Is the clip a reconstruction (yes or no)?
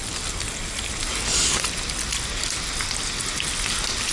no